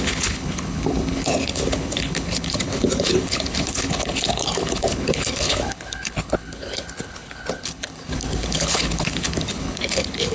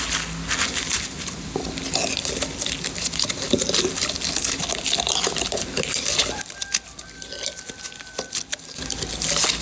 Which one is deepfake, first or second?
first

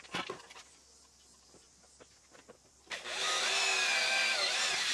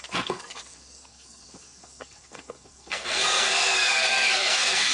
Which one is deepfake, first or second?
second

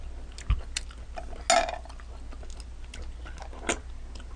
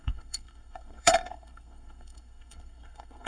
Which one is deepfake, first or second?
second